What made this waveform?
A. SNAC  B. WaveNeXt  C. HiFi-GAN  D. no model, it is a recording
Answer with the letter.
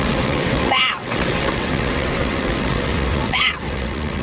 B